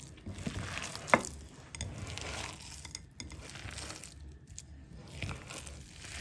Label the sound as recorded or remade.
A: recorded